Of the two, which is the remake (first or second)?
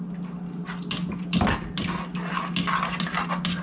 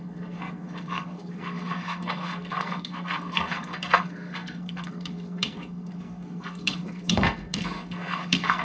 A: second